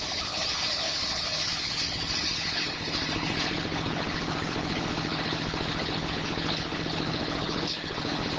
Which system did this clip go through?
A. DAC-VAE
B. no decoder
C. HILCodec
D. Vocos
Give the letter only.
C